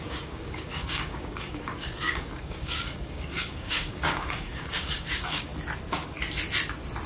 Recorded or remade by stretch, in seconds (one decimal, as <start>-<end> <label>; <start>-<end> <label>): 0.0-5.5 remade; 5.5-7.1 recorded